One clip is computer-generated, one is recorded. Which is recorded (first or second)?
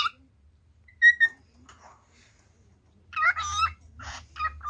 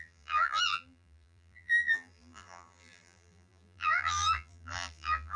first